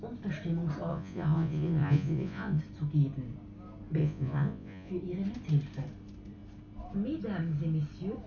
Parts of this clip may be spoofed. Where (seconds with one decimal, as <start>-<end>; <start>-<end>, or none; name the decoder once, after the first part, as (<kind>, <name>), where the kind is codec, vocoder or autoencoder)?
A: 0.9-2.6 (vocoder, Vocos); 4.0-4.9